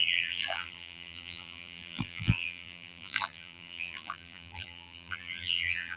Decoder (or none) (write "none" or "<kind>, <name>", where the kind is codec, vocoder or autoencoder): vocoder, BigVGAN v2